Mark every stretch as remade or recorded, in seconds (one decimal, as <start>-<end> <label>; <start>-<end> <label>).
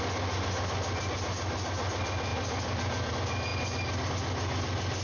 0.0-5.0 recorded